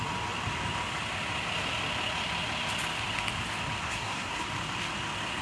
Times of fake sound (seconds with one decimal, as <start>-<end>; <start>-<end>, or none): 3.8-4.4